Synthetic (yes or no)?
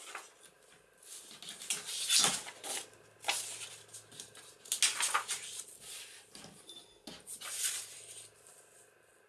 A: no